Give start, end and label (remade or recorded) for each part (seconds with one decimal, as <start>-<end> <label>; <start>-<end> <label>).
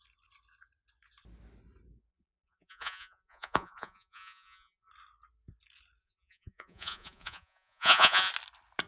0.0-2.1 recorded; 2.1-4.9 remade; 4.9-6.0 recorded; 6.0-8.3 remade; 8.3-8.9 recorded